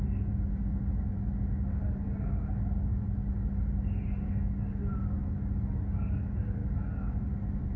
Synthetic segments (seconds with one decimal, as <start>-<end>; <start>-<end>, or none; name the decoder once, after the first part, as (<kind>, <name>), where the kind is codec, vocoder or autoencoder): none